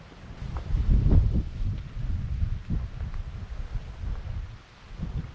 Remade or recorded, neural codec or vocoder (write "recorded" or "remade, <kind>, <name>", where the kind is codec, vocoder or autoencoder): recorded